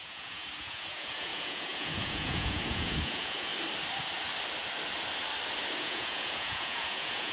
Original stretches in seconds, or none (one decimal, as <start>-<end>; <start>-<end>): 3.5-5.8